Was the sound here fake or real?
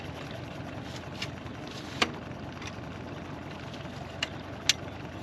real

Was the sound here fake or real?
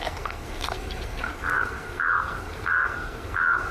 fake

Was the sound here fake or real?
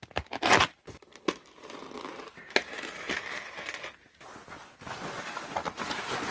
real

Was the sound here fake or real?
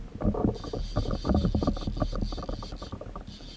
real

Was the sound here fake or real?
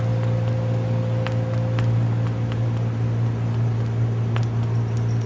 real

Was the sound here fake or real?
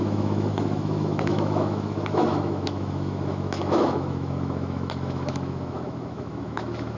fake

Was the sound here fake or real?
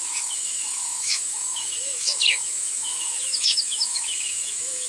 fake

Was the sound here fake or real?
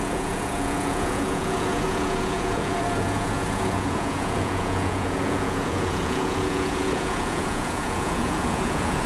fake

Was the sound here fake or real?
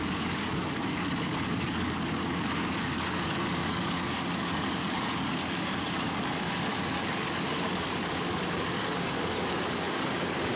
fake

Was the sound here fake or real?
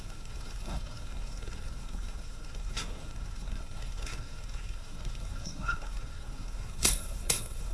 fake